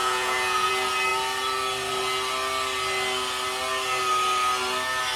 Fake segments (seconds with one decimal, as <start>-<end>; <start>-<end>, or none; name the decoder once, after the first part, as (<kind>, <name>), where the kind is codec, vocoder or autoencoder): 0.0-0.7 (vocoder, Vocos)